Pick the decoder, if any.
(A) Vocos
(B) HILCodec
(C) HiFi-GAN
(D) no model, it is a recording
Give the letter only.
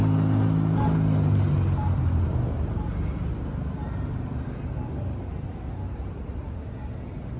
D